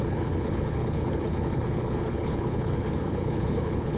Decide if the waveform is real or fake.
fake